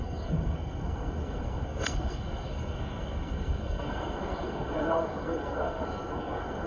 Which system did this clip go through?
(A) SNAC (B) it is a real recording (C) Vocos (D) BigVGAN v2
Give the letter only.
A